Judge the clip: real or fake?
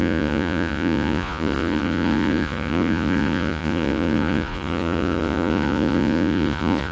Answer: fake